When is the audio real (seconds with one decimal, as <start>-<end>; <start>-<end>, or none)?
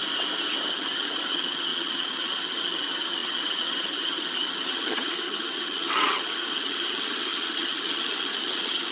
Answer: 0.0-0.7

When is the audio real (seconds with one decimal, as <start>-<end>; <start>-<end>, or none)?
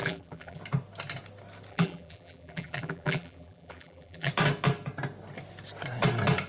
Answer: 0.6-1.7; 4.3-6.5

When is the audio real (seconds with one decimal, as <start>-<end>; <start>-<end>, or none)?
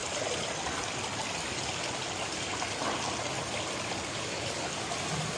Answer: 0.0-4.1; 4.7-5.4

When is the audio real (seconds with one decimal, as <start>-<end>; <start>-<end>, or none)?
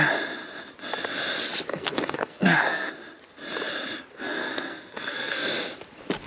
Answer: 0.0-1.7; 2.9-4.1; 5.6-6.3